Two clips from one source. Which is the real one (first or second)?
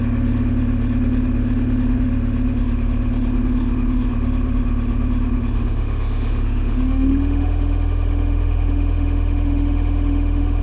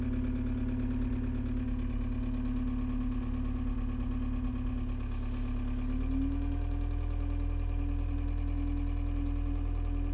second